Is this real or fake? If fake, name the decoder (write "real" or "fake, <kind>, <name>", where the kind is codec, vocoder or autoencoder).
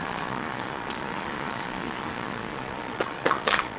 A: fake, vocoder, Vocos